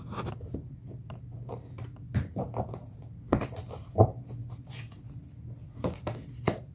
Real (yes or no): yes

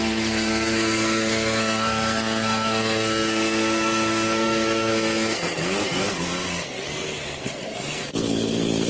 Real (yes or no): no